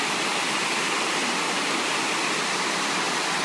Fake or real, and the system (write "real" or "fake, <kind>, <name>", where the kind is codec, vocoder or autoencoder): real